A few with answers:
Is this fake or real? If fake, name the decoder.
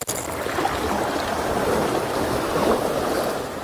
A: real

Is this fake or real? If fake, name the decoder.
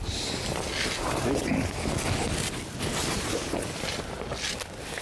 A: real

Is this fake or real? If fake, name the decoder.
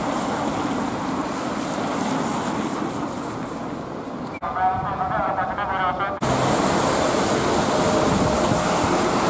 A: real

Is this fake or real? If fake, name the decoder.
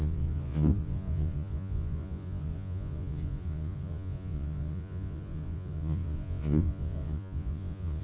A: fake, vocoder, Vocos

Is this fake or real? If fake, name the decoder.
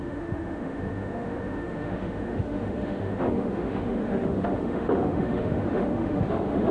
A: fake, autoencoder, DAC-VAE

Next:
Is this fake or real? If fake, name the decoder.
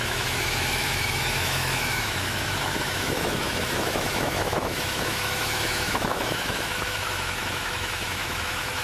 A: fake, autoencoder, DAC-VAE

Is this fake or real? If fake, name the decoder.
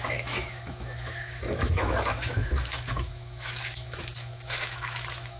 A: fake, autoencoder, DAC-VAE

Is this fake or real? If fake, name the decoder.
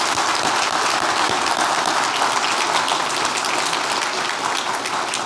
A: real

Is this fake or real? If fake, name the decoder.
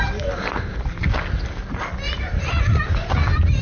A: real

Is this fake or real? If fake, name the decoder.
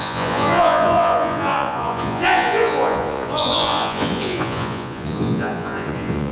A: fake, vocoder, Vocos